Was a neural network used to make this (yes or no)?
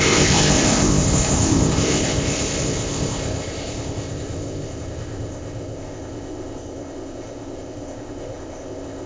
yes